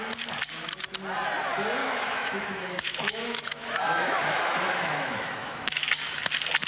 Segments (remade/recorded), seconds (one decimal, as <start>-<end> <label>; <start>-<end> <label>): 0.0-1.8 recorded; 1.8-5.8 remade; 5.8-6.7 recorded